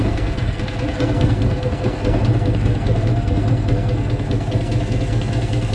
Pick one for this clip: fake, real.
fake